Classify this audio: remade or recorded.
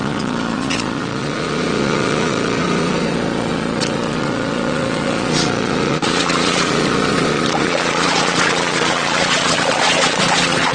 remade